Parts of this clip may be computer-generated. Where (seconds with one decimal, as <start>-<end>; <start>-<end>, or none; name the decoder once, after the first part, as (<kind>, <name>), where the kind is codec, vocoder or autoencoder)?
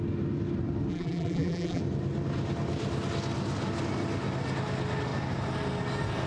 0.9-1.8 (vocoder, BigVGAN v2)